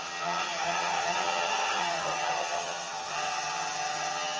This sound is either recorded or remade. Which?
remade